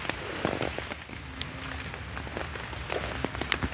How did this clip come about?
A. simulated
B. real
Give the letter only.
B